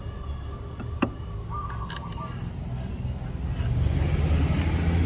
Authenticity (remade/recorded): recorded